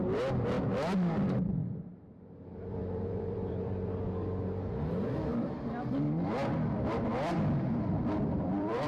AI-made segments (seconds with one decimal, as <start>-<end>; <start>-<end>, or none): 1.6-4.6; 7.1-8.9